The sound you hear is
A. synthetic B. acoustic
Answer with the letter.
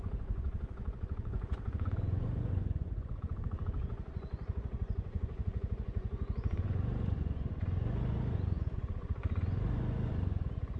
A